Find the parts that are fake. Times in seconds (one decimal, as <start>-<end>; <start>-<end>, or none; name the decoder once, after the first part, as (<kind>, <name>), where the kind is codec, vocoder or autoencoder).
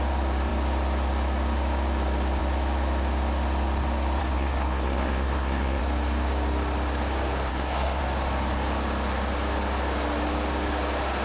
4.2-5.8 (codec, SNAC); 7.5-8.0